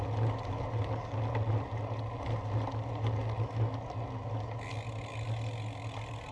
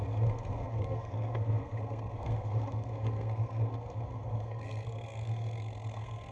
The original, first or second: first